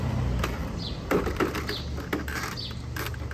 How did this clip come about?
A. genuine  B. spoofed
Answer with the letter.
A